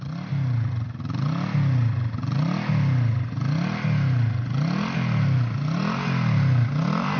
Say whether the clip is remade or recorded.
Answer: recorded